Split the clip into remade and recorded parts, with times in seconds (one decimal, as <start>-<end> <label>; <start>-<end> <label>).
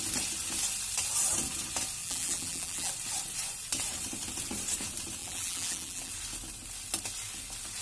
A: 0.0-2.0 recorded; 2.0-2.9 remade; 2.9-5.2 recorded; 5.2-6.1 remade; 6.1-7.8 recorded